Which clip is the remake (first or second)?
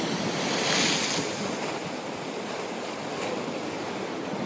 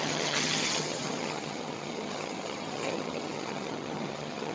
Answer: second